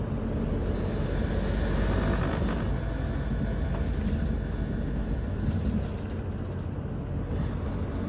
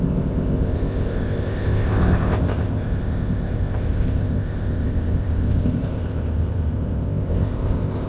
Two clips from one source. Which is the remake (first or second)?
second